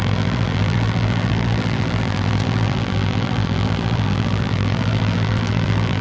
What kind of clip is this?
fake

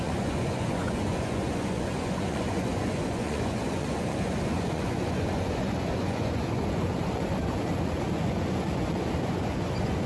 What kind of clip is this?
fake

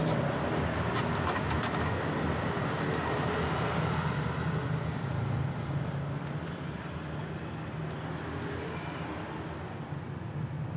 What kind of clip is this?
real